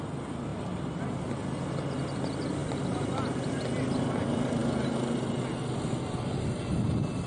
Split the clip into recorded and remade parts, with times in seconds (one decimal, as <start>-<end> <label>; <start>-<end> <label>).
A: 0.0-7.3 recorded